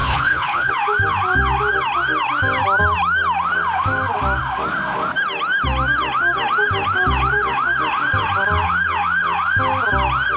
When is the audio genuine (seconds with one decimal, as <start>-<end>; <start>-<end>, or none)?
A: 0.7-10.4